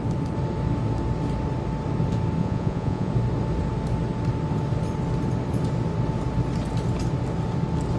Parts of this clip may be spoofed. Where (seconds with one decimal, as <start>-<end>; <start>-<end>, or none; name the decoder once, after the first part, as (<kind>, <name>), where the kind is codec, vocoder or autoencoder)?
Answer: 2.4-3.1 (vocoder, Vocos)